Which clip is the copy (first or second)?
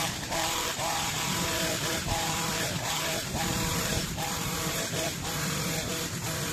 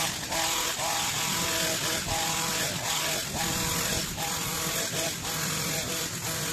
first